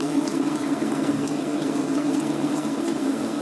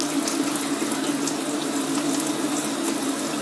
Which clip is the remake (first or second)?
first